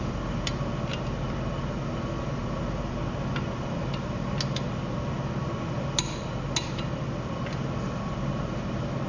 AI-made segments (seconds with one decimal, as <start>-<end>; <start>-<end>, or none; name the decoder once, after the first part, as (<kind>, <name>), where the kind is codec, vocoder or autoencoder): none